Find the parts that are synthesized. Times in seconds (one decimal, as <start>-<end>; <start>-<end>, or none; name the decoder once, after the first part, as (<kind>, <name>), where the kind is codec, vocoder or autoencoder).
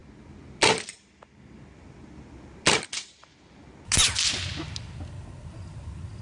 none